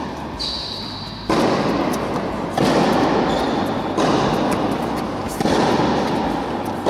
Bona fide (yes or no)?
yes